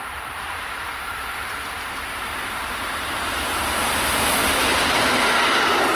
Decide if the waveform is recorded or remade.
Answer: remade